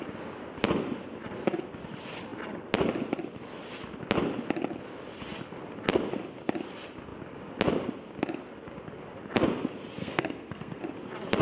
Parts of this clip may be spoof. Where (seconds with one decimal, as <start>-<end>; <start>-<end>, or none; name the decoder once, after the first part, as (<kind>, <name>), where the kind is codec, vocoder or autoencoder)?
10.0-10.8 (codec, SNAC)